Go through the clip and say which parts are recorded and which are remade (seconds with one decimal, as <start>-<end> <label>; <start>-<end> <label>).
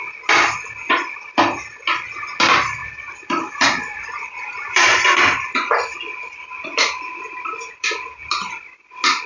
0.0-2.8 recorded; 2.8-5.2 remade; 5.2-5.9 recorded; 5.9-8.3 remade; 8.3-9.3 recorded